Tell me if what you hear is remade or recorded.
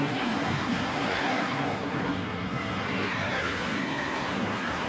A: remade